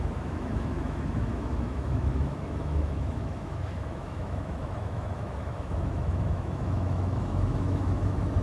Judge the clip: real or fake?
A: fake